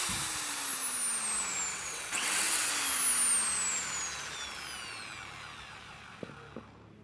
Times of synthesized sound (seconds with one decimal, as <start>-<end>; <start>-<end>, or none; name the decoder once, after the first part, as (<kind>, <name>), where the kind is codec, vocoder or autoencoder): 1.7-2.7 (vocoder, WaveNeXt)

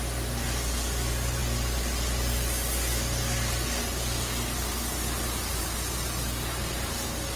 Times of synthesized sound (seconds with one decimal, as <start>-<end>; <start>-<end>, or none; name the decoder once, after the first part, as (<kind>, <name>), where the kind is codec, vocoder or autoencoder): none

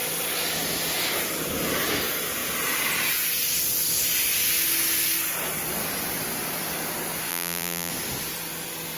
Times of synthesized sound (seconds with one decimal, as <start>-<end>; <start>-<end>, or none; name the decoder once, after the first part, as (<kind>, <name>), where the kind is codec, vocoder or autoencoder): 7.3-7.9 (vocoder, BigVGAN v2)

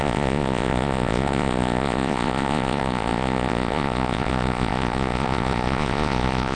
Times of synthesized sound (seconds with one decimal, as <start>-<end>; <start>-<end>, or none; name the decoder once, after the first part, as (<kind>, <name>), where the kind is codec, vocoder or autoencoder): 0.0-6.6 (vocoder, Vocos)

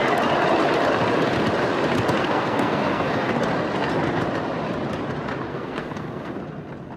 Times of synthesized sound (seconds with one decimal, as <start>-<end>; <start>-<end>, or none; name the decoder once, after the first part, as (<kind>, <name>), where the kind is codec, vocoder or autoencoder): 2.2-3.3 (codec, SNAC); 5.5-6.4